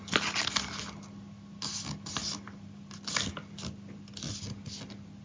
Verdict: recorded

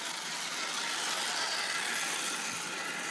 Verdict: recorded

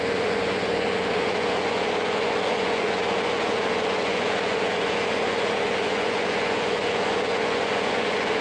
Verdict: remade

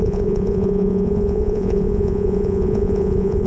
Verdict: remade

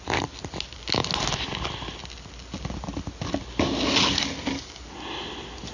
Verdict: recorded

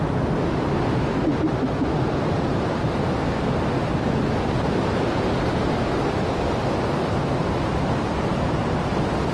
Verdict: recorded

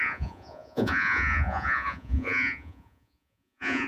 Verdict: remade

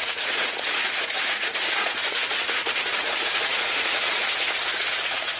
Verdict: remade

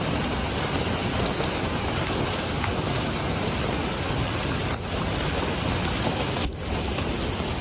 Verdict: recorded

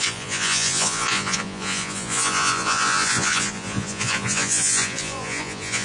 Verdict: remade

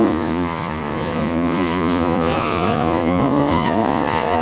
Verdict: remade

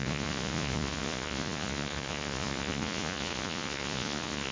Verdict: remade